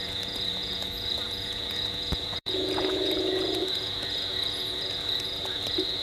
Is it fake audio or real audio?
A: fake